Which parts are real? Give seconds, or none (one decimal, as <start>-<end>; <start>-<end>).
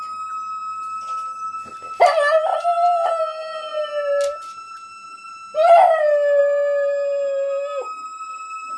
0.0-8.8